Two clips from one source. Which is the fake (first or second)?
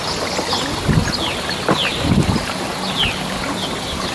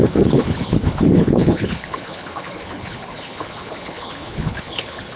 second